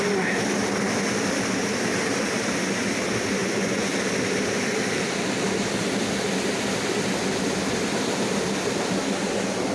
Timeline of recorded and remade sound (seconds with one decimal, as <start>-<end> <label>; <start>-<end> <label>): 0.0-3.4 recorded; 3.4-3.9 remade; 3.9-9.7 recorded